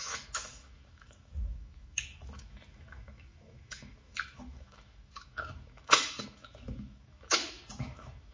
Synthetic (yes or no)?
yes